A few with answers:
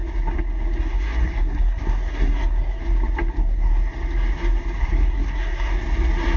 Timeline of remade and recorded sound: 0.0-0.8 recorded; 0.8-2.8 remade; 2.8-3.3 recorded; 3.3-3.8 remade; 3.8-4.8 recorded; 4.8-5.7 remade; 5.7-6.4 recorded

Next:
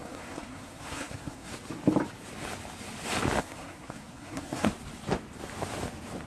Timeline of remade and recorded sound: 0.0-1.5 remade; 1.5-3.4 recorded; 3.4-4.7 remade; 4.7-6.3 recorded

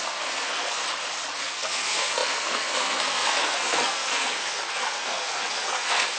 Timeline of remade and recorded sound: 0.0-0.8 remade; 0.8-1.4 recorded; 1.4-6.2 remade

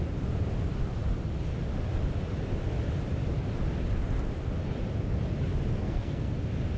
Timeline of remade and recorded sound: 0.0-5.7 recorded; 5.7-6.3 remade; 6.3-6.8 recorded

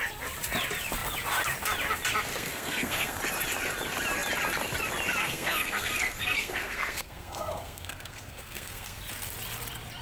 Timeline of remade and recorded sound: 0.0-2.3 recorded; 2.3-3.2 remade; 3.2-5.2 recorded; 5.2-9.0 remade; 9.0-10.0 recorded

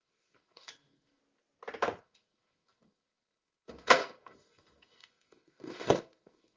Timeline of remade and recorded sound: 0.0-1.2 remade; 1.2-2.0 recorded; 2.0-6.6 remade

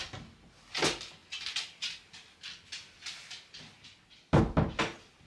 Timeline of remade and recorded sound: 0.0-5.3 recorded